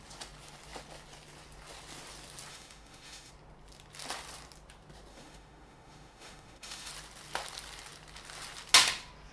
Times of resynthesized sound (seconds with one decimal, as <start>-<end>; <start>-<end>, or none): 2.5-3.3; 5.1-6.9